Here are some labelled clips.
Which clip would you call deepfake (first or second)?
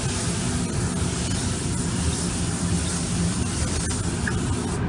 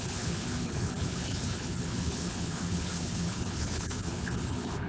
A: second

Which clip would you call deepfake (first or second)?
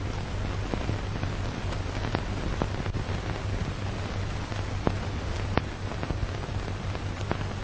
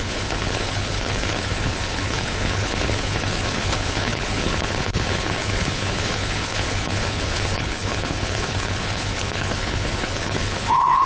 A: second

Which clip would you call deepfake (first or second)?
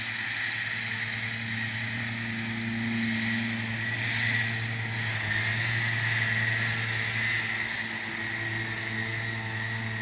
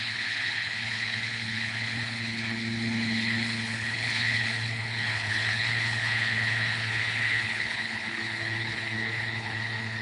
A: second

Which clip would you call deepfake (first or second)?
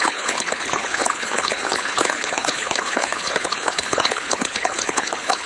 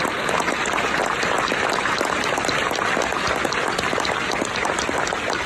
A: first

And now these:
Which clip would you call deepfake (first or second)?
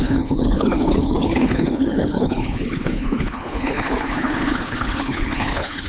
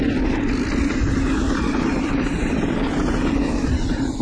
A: first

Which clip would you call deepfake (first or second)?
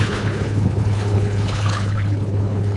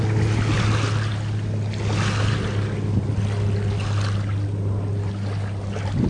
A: first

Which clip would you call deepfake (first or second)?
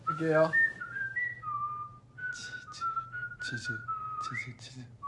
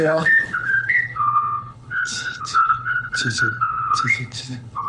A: second